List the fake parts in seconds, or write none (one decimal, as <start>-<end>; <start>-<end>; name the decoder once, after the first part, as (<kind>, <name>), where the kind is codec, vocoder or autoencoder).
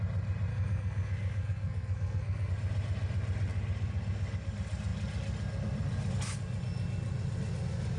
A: 0.5-2.5 (codec, SNAC)